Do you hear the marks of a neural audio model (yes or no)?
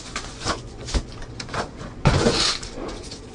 yes